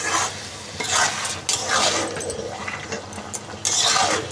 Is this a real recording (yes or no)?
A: yes